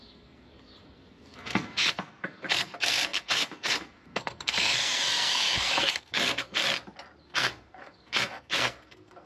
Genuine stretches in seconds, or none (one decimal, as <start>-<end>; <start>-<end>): 6.6-7.2

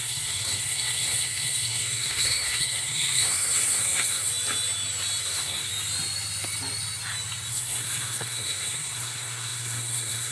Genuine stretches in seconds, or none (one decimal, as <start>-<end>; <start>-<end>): 4.3-5.2; 5.7-7.5

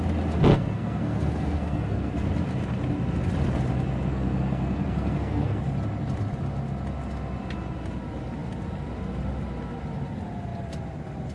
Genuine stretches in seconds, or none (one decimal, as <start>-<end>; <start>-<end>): 0.0-0.5; 2.2-4.1; 5.6-11.3

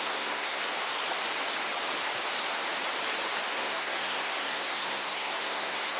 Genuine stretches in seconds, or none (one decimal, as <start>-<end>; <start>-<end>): 0.6-3.5